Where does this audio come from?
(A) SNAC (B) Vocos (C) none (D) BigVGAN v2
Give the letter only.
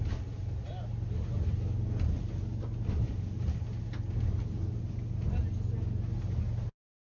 C